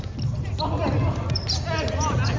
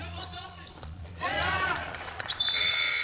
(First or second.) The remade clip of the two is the second